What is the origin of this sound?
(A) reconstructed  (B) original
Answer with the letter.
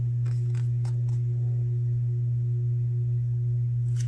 B